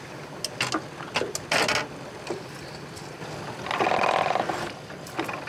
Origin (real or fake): real